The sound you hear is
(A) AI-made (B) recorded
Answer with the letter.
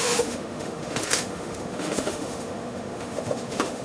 A